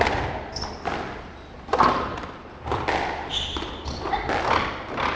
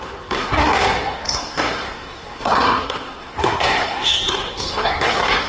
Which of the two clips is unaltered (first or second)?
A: first